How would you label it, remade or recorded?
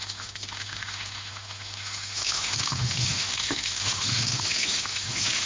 remade